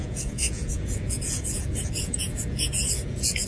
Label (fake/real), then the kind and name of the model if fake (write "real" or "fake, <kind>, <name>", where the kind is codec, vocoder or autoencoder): fake, vocoder, Vocos